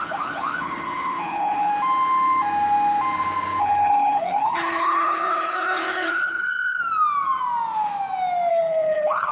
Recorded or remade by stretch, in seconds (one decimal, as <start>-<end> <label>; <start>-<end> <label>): 0.0-1.7 remade; 1.7-3.6 recorded; 3.6-6.8 remade; 6.8-8.5 recorded; 8.5-9.3 remade